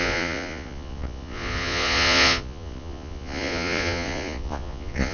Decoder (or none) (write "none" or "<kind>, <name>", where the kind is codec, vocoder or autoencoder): vocoder, Vocos